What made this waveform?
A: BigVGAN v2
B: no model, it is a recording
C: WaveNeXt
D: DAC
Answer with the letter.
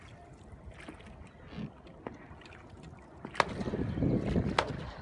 B